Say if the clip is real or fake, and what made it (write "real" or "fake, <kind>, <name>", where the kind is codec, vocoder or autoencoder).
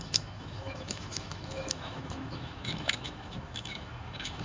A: fake, autoencoder, DAC-VAE